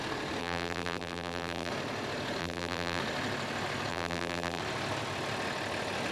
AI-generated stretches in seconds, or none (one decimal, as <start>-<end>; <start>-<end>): 0.4-1.7; 2.4-3.0; 3.9-4.6